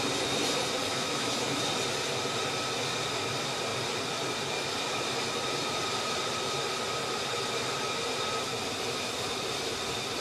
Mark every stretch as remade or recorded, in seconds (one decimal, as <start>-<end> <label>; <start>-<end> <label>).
0.0-0.9 recorded; 0.9-1.6 remade; 1.6-10.2 recorded